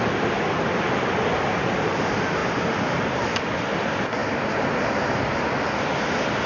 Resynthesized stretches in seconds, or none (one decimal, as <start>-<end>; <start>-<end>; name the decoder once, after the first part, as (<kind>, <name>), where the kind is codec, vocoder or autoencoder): 0.0-6.5 (vocoder, BigVGAN v2)